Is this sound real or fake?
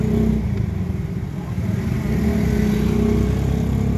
real